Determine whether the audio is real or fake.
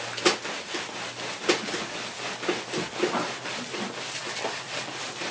real